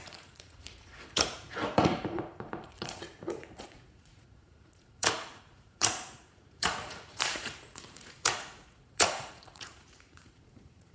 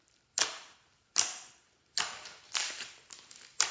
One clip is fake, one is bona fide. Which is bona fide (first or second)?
second